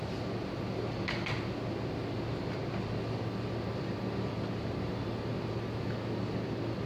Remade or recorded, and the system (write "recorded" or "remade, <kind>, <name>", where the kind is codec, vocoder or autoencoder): recorded